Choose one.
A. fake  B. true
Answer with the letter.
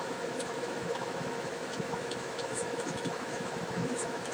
A